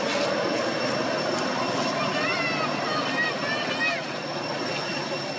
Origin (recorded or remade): recorded